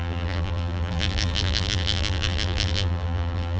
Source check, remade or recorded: remade